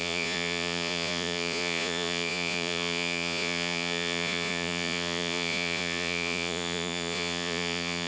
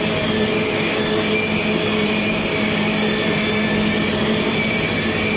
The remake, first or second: first